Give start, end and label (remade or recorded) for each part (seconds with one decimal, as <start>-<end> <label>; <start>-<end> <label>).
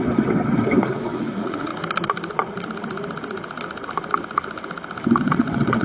0.0-1.7 remade; 1.7-5.2 recorded; 5.2-5.8 remade